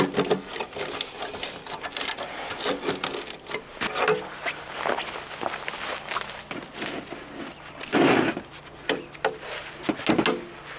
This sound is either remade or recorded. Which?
recorded